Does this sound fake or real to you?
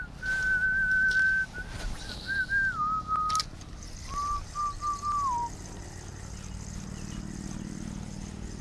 real